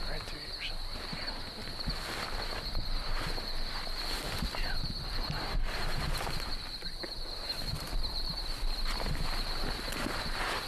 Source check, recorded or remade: recorded